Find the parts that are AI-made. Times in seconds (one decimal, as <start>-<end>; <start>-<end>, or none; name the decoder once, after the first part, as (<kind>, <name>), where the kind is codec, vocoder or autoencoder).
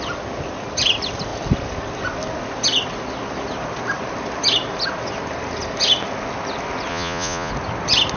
6.9-7.5 (vocoder, Vocos)